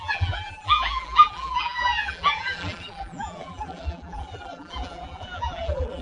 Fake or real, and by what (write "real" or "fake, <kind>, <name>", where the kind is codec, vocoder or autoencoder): fake, vocoder, BigVGAN v2